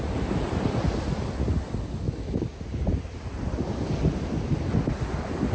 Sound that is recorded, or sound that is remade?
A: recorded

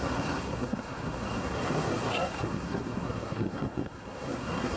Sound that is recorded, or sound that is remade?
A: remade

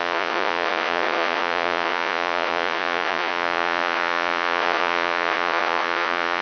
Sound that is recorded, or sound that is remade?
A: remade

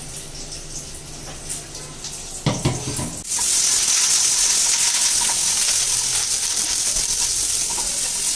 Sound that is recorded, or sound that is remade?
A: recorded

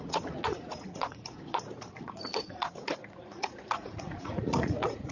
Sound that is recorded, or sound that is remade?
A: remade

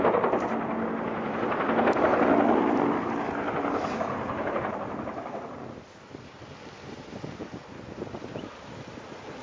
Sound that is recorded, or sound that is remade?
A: recorded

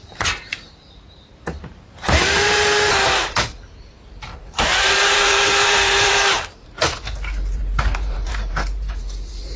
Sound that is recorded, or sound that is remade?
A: remade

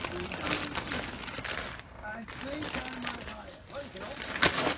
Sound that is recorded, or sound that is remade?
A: recorded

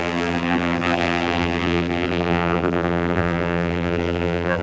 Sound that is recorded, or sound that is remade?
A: remade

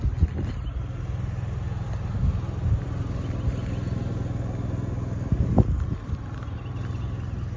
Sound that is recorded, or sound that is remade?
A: recorded